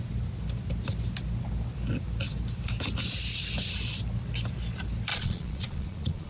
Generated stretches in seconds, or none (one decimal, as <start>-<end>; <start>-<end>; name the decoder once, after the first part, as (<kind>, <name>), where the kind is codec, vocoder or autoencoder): 5.1-6.3 (vocoder, Vocos)